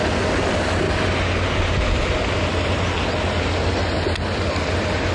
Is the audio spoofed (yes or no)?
no